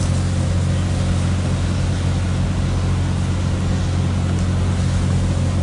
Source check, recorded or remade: recorded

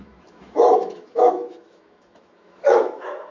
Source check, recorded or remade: remade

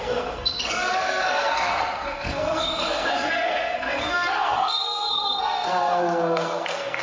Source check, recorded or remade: remade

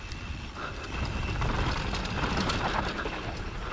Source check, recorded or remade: recorded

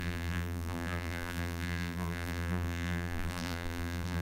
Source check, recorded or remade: remade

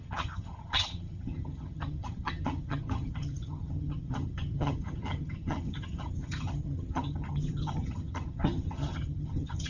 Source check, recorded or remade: remade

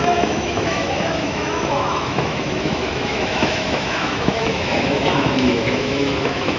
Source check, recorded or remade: remade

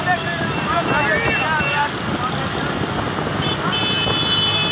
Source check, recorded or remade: recorded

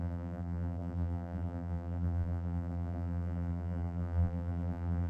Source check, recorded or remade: remade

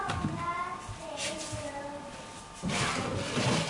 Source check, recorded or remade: recorded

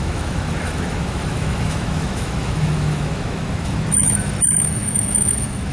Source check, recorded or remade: remade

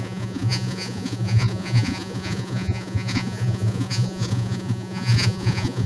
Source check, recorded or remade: remade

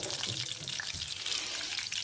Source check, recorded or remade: remade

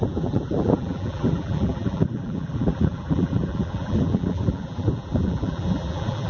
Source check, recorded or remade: remade